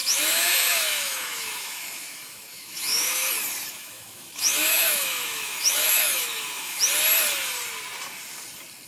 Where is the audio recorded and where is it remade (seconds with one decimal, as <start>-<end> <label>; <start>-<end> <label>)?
0.0-3.3 remade; 3.3-3.8 recorded; 3.8-6.8 remade; 6.8-8.9 recorded